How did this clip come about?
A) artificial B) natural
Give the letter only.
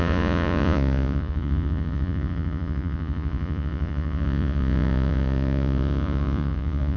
A